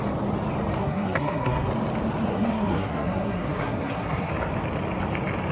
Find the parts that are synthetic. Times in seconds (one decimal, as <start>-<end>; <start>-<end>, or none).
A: 0.8-1.7; 2.3-4.3